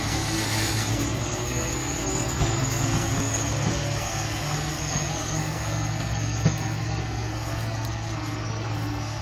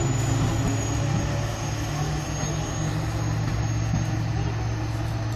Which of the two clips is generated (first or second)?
first